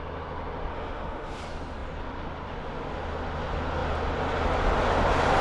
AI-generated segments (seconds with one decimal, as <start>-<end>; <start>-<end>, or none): 0.7-1.4

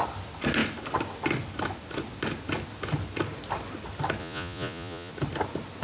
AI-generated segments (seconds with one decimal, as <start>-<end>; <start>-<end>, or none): 4.2-5.1

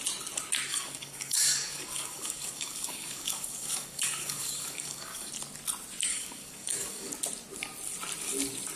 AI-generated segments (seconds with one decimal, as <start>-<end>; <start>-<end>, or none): 0.7-5.3; 6.1-7.1